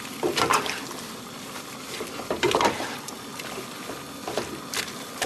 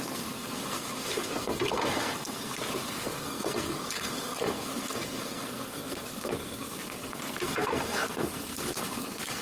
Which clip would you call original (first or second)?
first